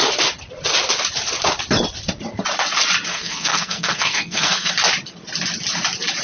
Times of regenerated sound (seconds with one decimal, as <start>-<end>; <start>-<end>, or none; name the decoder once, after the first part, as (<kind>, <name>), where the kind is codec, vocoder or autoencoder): 3.1-4.7 (codec, SNAC)